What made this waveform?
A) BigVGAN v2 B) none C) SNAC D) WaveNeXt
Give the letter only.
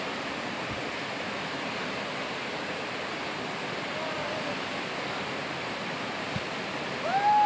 B